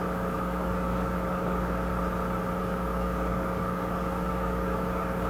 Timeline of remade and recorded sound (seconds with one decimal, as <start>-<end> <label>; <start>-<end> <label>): 0.0-1.9 remade; 1.9-2.6 recorded; 2.6-5.3 remade

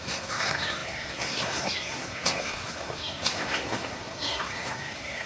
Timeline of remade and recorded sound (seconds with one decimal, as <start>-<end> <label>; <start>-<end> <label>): 0.0-5.3 remade

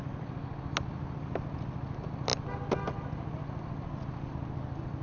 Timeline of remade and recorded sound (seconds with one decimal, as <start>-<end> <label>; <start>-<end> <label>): 0.0-5.0 recorded

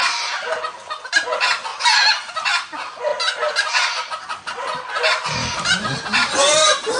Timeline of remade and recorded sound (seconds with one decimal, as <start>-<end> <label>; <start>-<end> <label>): 0.0-7.0 recorded

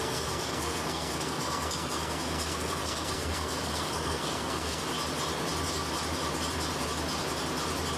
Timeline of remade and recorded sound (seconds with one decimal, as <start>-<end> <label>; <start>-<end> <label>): 0.0-4.8 remade; 4.8-8.0 recorded

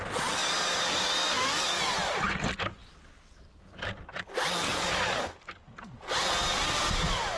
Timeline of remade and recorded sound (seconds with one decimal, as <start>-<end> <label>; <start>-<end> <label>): 0.0-7.4 recorded

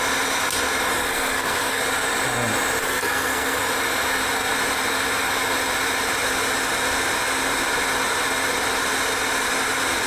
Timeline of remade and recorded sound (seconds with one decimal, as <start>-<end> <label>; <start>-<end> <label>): 0.0-1.0 recorded; 1.0-1.8 remade; 1.8-2.8 recorded; 2.8-3.6 remade; 3.6-10.1 recorded

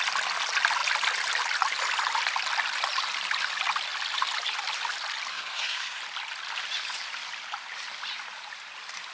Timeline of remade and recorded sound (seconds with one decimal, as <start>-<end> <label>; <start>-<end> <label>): 0.0-5.3 recorded; 5.3-6.0 remade; 6.0-9.1 recorded